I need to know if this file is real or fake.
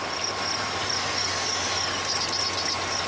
real